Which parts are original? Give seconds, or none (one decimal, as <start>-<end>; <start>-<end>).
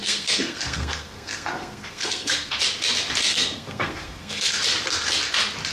2.6-3.3; 4.6-5.7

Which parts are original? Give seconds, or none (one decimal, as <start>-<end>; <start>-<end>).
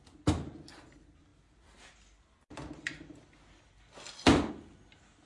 0.0-5.3